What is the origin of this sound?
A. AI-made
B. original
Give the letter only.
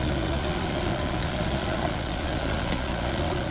A